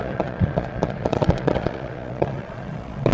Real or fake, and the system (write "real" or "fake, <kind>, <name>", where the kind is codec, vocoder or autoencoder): fake, vocoder, Vocos